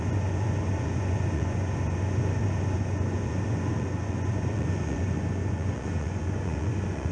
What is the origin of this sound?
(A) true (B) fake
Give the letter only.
B